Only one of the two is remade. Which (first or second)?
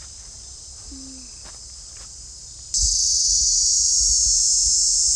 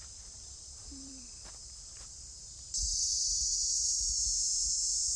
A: second